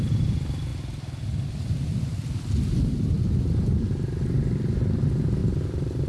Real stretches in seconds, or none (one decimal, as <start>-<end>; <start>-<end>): 0.0-6.1